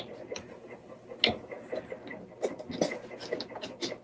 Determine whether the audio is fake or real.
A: real